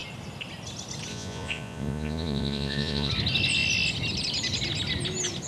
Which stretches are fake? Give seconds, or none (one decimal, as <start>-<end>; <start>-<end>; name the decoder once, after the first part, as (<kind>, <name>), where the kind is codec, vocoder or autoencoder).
1.1-3.1 (vocoder, Vocos)